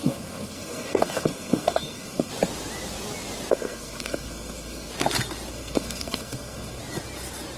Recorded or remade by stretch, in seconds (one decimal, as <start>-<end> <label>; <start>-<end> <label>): 0.0-2.3 remade; 2.3-3.5 recorded; 3.5-4.9 remade; 4.9-5.5 recorded; 5.5-6.8 remade; 6.8-7.6 recorded